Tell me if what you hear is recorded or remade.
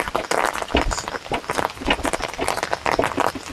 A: recorded